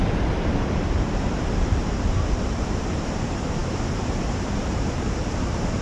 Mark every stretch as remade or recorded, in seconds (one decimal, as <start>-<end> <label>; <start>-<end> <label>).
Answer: 0.0-5.8 remade